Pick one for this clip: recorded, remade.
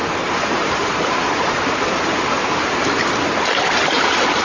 remade